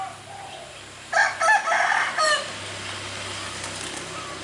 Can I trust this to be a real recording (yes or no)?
yes